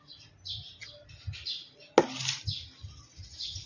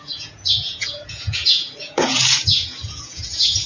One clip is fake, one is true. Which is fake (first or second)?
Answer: second